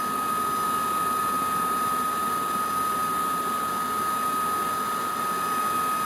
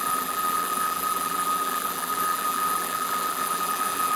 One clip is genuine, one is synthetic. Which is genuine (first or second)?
first